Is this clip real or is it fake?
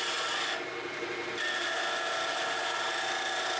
real